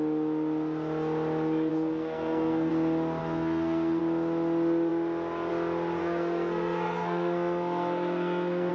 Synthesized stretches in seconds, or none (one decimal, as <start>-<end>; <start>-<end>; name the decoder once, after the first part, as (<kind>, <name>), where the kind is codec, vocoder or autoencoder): 1.7-2.7 (codec, SNAC); 3.2-4.0; 6.0-8.7

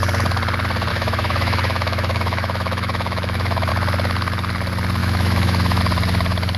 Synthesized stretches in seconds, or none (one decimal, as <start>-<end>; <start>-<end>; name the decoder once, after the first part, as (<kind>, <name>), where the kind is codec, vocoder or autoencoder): 0.9-3.7 (autoencoder, DAC-VAE); 5.0-5.8

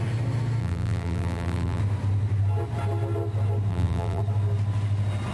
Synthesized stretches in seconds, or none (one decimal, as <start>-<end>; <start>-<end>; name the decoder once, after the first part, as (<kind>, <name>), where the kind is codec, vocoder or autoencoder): 0.6-1.8 (vocoder, BigVGAN v2); 3.7-4.2

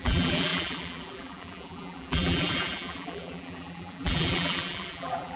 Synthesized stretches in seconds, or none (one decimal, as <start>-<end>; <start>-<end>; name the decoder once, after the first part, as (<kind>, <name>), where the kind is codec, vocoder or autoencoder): 0.0-5.4 (vocoder, BigVGAN v2)

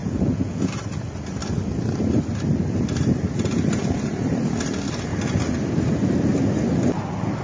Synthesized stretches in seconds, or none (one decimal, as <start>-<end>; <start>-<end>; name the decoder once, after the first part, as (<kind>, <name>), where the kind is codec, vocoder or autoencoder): 0.0-0.7 (vocoder, Vocos)

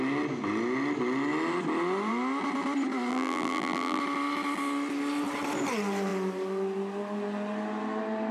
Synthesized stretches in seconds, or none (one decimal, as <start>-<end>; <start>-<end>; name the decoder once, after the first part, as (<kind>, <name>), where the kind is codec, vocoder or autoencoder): 3.1-4.0 (vocoder, BigVGAN v2)

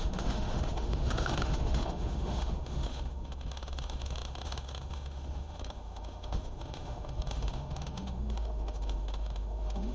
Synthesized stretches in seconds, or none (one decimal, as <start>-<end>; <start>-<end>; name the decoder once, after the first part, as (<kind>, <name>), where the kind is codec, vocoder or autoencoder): 0.0-9.9 (autoencoder, DAC-VAE)

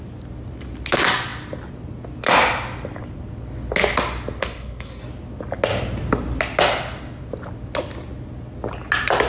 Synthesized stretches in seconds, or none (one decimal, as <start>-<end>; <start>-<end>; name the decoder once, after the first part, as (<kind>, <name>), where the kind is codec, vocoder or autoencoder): 4.4-5.0 (codec, SNAC)